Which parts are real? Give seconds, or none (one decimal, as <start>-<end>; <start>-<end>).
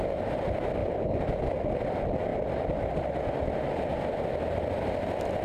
0.0-5.4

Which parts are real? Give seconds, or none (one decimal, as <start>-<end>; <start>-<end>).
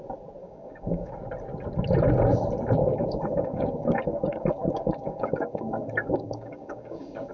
0.0-0.4; 1.1-2.8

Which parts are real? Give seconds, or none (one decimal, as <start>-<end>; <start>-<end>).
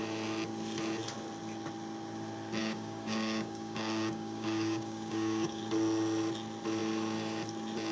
0.0-2.6; 5.6-7.9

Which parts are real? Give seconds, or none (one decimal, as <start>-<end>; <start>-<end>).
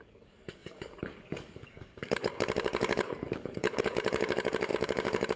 none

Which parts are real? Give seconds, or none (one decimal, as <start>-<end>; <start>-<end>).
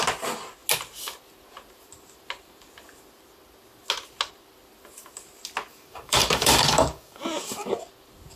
0.0-5.7; 7.7-8.4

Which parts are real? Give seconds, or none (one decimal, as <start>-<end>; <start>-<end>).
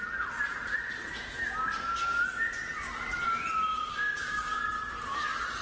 0.0-3.7; 4.6-5.6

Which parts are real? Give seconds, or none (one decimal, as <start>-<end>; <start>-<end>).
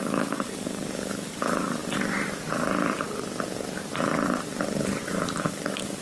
1.8-5.4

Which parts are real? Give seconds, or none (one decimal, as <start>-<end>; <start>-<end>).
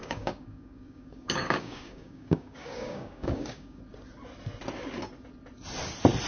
3.8-6.3